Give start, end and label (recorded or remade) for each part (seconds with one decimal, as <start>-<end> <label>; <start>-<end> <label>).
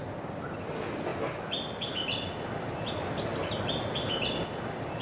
0.0-5.0 recorded